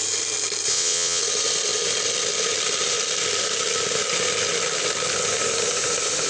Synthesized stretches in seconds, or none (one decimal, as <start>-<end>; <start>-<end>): 0.7-1.2